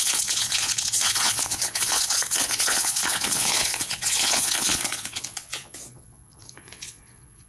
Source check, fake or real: fake